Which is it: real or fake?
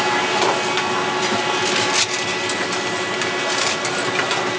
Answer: real